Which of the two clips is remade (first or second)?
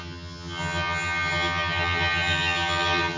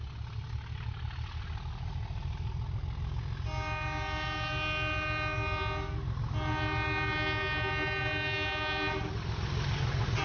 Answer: first